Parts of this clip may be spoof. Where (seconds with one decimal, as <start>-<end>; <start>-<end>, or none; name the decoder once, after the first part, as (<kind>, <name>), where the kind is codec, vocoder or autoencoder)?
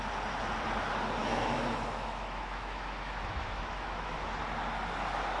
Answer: 1.2-4.4 (autoencoder, DAC-VAE)